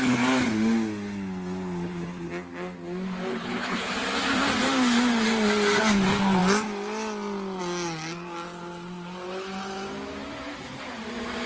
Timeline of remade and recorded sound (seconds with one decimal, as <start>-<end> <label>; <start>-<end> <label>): 0.0-3.3 recorded; 3.3-3.9 remade; 3.9-11.5 recorded